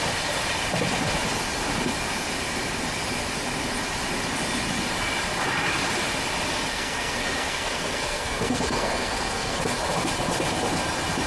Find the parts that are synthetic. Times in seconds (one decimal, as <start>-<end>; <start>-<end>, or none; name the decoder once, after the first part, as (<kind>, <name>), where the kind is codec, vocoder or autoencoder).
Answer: 6.7-9.6 (codec, SNAC)

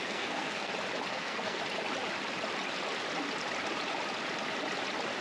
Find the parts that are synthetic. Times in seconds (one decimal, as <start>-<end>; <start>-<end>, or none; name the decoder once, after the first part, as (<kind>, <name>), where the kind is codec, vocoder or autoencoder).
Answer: 0.0-0.7 (codec, SNAC); 1.1-1.6

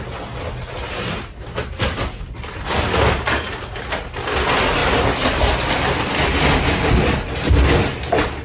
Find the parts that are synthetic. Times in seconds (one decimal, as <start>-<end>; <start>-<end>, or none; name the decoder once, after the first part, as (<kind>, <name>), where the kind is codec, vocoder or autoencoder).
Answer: none